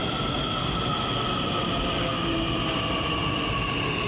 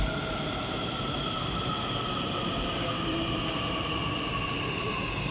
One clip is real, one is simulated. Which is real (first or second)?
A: first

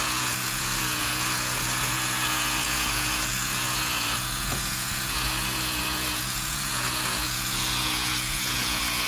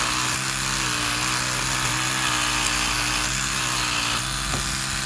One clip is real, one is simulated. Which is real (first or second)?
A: second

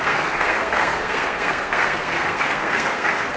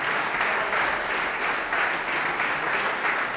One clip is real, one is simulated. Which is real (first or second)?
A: second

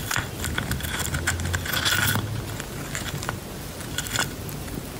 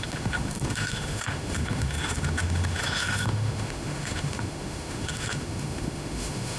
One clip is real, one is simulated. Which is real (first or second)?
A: first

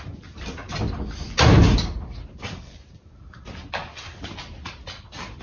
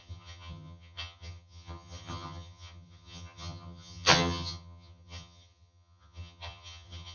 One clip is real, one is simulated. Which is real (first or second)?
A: first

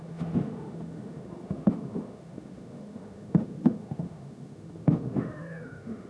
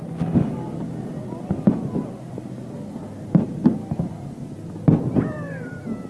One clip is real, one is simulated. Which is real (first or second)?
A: second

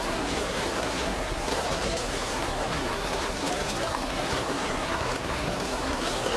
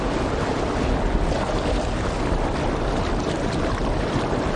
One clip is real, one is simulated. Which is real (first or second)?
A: second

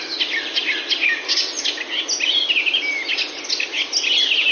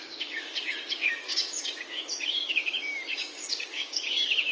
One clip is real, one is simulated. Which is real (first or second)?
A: first